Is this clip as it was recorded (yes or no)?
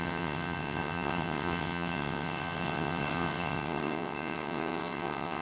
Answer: no